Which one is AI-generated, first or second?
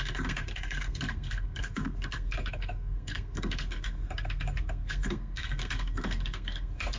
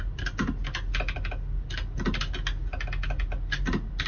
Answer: first